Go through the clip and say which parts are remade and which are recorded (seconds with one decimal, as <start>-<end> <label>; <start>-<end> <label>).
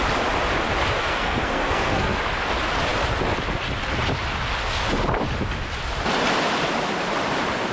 0.0-1.0 recorded; 1.0-2.2 remade; 2.2-7.7 recorded